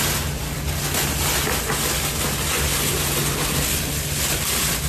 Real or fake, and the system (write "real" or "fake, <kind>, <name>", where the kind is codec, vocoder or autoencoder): real